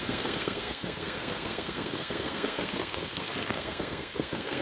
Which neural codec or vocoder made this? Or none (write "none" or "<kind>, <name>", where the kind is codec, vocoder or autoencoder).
codec, SNAC